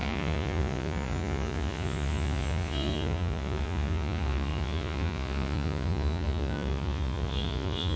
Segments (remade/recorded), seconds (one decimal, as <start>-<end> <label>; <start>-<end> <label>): 0.0-8.0 remade